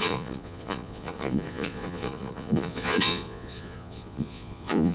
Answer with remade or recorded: remade